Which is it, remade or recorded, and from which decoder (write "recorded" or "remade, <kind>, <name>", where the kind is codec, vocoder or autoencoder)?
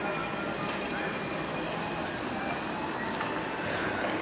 recorded